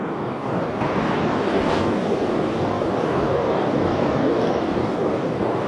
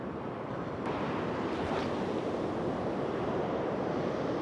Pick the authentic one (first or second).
second